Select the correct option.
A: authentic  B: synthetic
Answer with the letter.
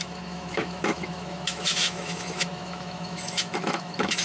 B